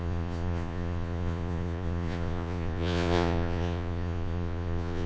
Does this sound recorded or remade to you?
remade